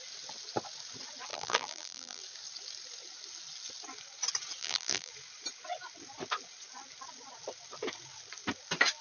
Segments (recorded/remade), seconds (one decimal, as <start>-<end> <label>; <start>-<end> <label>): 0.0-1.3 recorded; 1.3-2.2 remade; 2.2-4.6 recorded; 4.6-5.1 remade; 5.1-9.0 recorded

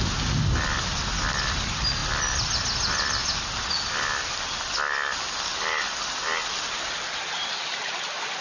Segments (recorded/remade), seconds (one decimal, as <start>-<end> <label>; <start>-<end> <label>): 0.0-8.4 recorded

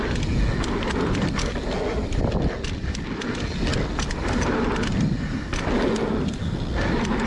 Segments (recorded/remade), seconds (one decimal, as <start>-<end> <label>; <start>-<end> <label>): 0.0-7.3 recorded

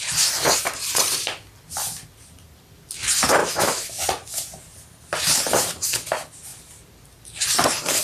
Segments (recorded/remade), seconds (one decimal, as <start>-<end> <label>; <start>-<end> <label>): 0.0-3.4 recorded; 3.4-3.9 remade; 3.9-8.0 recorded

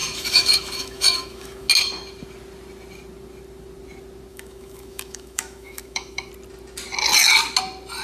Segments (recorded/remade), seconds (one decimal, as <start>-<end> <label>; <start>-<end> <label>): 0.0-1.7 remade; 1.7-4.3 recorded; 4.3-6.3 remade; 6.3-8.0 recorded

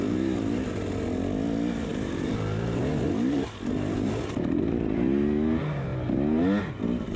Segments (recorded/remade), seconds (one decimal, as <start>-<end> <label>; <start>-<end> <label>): 0.0-1.9 recorded; 1.9-2.8 remade; 2.8-7.2 recorded

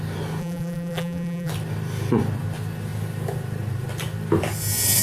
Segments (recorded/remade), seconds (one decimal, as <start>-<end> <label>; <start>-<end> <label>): 0.0-0.4 recorded; 0.4-1.5 remade; 1.5-5.0 recorded